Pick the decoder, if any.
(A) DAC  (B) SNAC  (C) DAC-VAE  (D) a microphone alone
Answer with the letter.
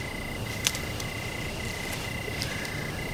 D